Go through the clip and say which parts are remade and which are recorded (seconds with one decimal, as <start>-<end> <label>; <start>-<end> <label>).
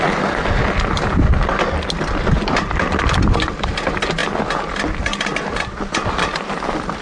0.0-7.0 recorded